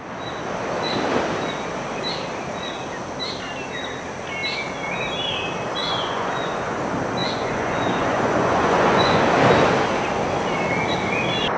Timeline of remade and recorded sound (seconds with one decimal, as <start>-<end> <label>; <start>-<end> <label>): 0.0-5.8 recorded; 5.8-6.8 remade; 6.8-7.2 recorded; 7.2-9.2 remade; 9.2-11.6 recorded